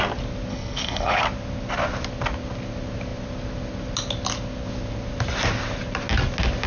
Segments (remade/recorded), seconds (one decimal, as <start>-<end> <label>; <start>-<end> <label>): 0.0-0.5 recorded; 0.5-1.2 remade; 1.2-6.7 recorded

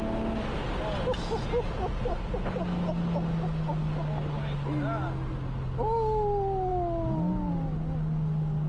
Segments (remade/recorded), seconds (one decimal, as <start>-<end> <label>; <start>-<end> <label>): 0.0-8.7 recorded

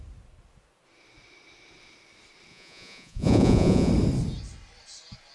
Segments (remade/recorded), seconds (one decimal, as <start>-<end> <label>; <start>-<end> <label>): 0.0-2.5 recorded; 2.5-3.9 remade; 3.9-5.3 recorded

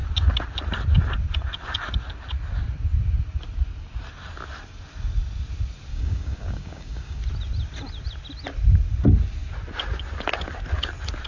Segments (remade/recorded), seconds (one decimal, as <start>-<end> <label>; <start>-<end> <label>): 0.0-5.9 recorded; 5.9-7.2 remade; 7.2-11.3 recorded

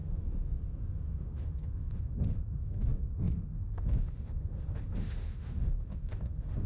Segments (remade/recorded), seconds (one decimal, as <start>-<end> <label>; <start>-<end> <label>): 0.0-6.7 remade

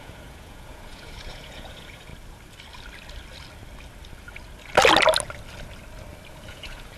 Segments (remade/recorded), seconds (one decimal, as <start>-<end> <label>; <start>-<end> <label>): 0.0-2.1 remade; 2.1-6.3 recorded; 6.3-7.0 remade

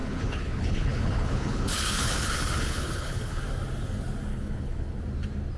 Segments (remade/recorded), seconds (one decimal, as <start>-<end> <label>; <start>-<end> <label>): 0.0-3.4 remade; 3.4-4.3 recorded; 4.3-5.0 remade; 5.0-5.6 recorded

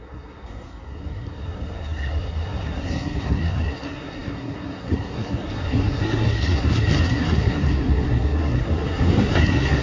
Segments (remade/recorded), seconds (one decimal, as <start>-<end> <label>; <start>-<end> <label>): 0.0-9.8 remade